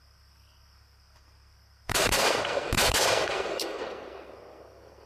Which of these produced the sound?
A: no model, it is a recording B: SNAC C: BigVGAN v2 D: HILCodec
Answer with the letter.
B